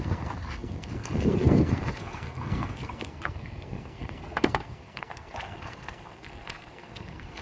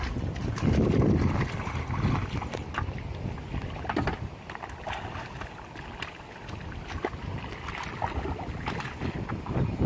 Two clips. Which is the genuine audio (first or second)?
second